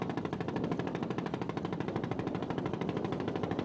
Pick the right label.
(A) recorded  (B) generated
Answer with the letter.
A